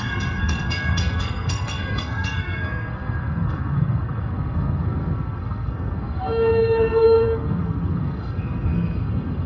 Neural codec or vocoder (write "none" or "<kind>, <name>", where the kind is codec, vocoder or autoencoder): codec, SNAC